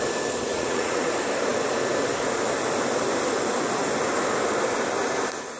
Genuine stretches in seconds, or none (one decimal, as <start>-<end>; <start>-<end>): 0.0-0.5; 1.1-5.6